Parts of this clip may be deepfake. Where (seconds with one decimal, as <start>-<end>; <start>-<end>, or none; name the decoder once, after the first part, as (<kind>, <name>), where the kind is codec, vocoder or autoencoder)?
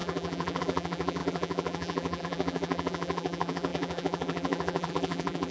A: 0.0-5.5 (vocoder, BigVGAN v2)